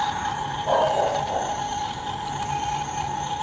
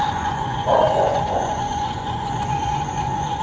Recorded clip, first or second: first